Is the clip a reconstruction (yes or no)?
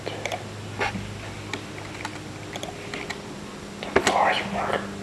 no